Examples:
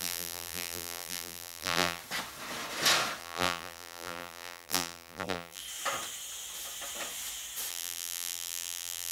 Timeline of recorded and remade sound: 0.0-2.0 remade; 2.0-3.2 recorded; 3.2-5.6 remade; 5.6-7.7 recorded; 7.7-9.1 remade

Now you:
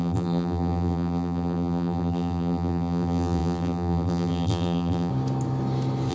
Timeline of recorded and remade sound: 0.0-5.1 remade; 5.1-6.1 recorded

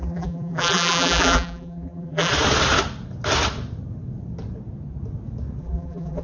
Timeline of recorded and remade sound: 0.0-2.3 remade; 2.3-5.6 recorded; 5.6-6.2 remade

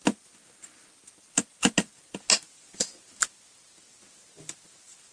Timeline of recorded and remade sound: 0.0-5.1 recorded

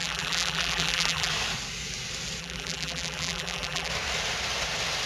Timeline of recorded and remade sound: 0.0-1.3 remade; 1.3-2.4 recorded; 2.4-3.9 remade; 3.9-5.1 recorded